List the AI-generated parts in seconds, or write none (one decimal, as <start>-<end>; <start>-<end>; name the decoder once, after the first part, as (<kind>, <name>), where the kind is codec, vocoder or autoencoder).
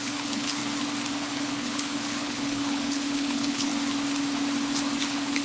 0.0-0.6 (codec, HILCodec); 1.1-3.7; 5.0-5.4